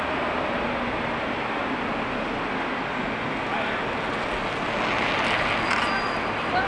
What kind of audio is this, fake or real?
real